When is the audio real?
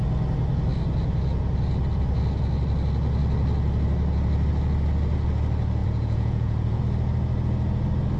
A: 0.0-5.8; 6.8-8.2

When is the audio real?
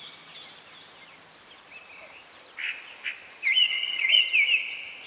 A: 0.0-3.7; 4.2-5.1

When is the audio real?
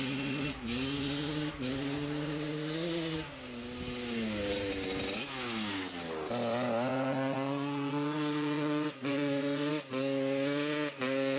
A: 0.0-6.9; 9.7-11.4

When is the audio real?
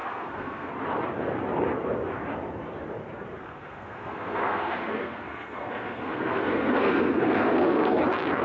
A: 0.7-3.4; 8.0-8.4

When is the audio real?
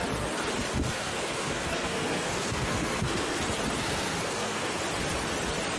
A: 0.0-0.7; 3.4-3.8; 4.8-5.8